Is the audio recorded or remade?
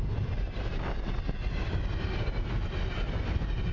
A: recorded